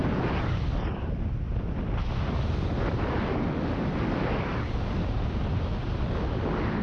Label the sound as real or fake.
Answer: real